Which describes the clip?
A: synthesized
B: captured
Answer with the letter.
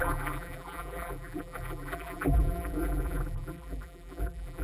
A